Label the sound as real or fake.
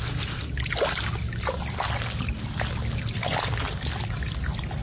real